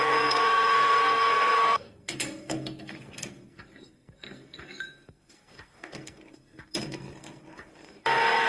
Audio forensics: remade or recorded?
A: remade